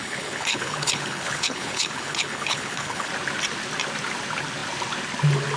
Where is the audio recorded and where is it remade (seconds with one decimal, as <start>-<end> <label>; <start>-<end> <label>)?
0.0-3.1 remade; 3.1-5.6 recorded